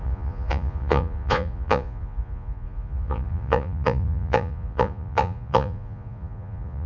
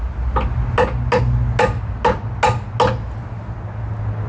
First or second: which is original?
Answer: second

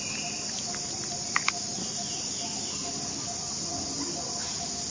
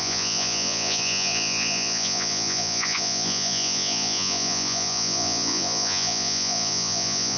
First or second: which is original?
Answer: first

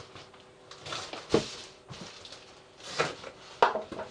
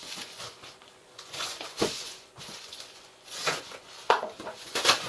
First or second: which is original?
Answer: first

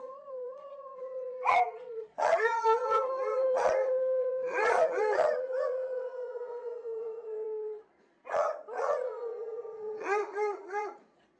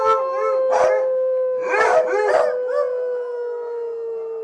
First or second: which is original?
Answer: second